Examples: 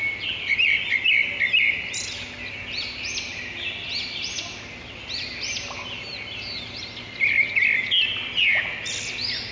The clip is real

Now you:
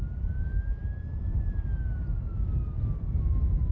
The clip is real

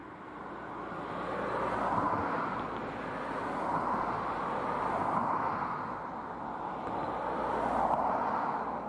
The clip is real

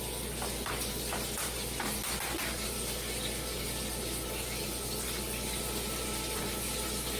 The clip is real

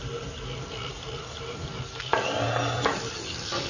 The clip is real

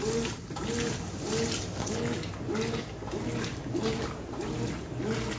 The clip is real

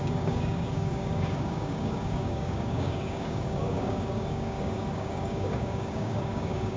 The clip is fake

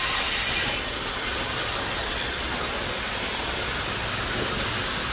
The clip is real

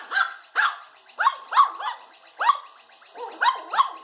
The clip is real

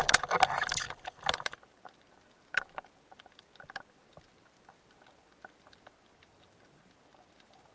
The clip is real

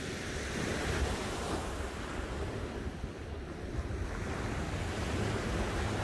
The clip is real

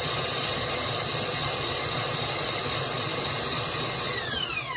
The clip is real